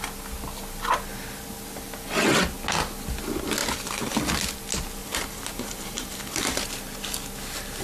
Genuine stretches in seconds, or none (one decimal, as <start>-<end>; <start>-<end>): 0.0-3.6; 4.1-5.0; 6.6-7.8